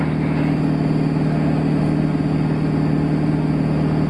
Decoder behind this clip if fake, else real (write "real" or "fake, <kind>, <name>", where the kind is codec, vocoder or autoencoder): real